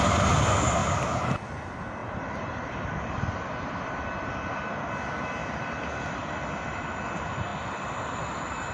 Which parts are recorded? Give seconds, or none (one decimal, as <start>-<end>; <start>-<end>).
0.0-0.8; 1.3-2.0; 2.9-5.4; 6.3-8.7